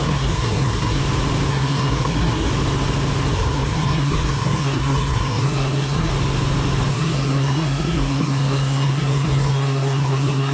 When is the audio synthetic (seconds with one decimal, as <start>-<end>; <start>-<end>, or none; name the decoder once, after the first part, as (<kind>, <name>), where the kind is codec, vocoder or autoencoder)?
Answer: 0.0-1.0 (codec, SNAC); 1.5-2.5; 3.3-6.1; 6.9-10.5

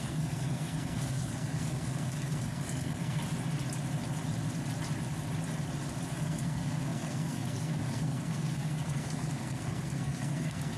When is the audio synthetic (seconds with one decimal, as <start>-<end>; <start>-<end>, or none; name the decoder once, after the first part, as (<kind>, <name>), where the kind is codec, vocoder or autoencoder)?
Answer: 0.0-3.2 (codec, SNAC); 6.1-10.8

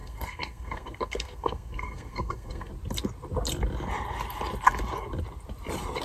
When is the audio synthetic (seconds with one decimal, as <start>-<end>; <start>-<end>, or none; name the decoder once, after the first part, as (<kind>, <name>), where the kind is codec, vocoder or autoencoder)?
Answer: 0.0-2.7 (codec, SNAC)

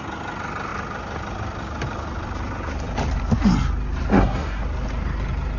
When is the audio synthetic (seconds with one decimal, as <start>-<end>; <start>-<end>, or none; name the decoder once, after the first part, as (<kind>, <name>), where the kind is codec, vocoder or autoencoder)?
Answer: 4.1-4.6 (codec, SNAC)

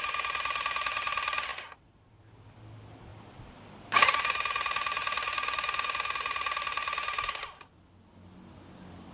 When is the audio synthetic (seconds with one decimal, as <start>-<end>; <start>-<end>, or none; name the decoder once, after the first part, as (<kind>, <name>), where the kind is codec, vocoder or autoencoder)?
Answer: none

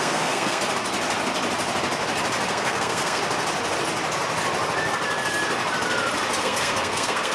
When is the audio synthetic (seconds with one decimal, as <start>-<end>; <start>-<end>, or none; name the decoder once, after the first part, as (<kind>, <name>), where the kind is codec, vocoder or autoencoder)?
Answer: 0.0-0.6 (codec, SNAC); 2.5-3.2; 6.4-7.3

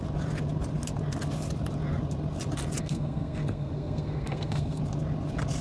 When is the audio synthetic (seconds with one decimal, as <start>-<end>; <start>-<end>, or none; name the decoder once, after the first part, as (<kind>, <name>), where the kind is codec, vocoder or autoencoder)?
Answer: 2.8-4.8 (codec, SNAC)